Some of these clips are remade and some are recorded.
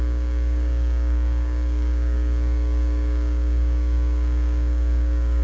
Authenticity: remade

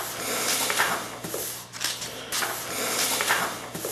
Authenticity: recorded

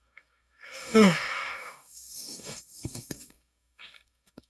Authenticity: remade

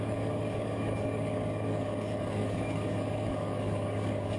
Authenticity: remade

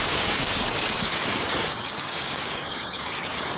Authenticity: remade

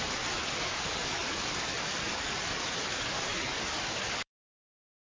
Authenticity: remade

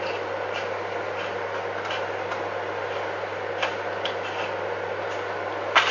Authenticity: recorded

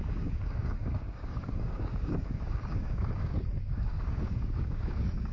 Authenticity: remade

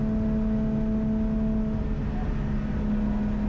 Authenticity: recorded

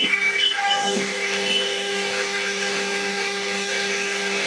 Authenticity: remade